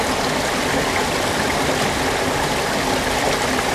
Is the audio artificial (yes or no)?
no